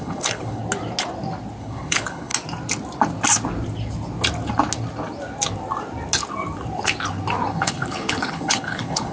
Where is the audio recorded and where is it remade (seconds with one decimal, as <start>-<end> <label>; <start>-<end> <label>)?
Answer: 0.0-0.6 remade; 0.6-1.6 recorded; 1.6-2.3 remade; 2.3-7.5 recorded; 7.5-9.1 remade